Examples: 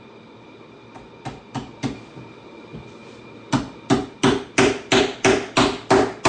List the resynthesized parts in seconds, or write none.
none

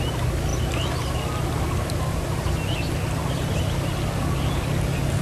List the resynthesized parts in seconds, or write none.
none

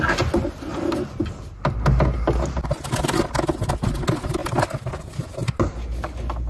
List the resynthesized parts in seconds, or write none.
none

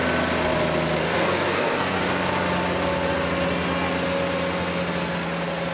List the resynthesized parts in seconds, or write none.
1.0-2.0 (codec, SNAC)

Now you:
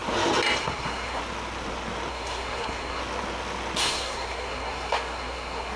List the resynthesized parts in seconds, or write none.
0.6-1.2 (codec, SNAC); 2.1-3.0; 3.8-5.8

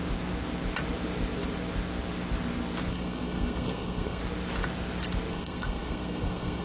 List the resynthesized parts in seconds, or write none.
2.9-4.2 (codec, SNAC); 5.3-6.6

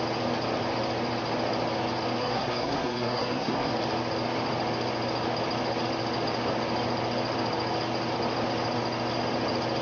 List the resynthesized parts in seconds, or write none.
2.2-3.7 (codec, SNAC)